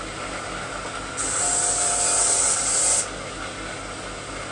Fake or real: real